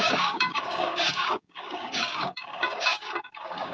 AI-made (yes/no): yes